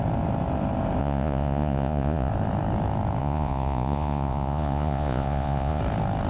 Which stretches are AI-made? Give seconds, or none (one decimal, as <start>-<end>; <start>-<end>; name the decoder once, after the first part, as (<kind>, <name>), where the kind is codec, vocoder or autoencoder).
1.0-2.3 (vocoder, Vocos); 3.2-5.8